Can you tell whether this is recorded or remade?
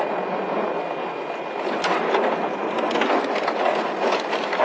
recorded